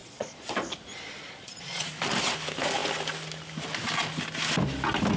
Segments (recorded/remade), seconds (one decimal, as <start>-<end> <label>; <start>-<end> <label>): 0.0-0.5 remade; 0.5-0.9 recorded; 0.9-1.9 remade; 1.9-5.2 recorded